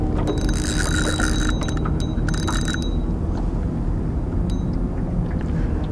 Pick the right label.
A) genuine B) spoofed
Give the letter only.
A